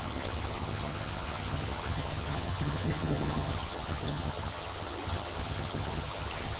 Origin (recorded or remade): remade